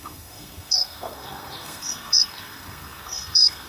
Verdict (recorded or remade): remade